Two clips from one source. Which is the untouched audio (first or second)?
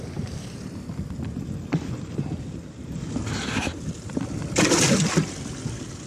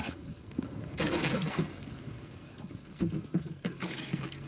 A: first